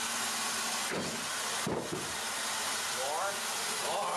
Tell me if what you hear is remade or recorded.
recorded